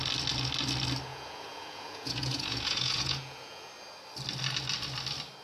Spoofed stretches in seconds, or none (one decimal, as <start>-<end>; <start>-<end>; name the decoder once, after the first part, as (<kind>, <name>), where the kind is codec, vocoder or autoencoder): 1.1-3.7 (vocoder, Vocos)